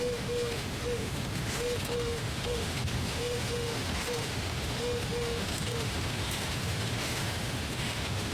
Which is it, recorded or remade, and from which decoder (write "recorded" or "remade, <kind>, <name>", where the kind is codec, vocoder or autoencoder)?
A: remade, autoencoder, DAC-VAE